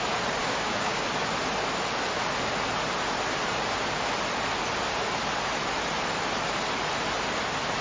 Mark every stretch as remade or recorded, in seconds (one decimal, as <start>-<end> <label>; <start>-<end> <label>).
0.0-0.4 recorded; 0.4-1.1 remade; 1.1-7.8 recorded